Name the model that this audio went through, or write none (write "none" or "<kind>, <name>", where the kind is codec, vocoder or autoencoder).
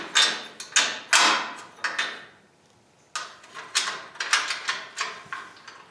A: none